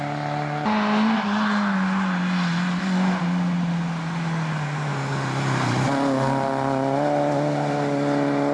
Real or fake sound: real